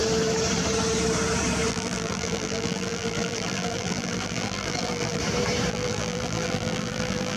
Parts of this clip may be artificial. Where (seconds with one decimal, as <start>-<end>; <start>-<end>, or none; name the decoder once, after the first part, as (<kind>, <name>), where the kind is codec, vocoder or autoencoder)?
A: 1.7-5.2 (vocoder, BigVGAN v2); 5.7-7.4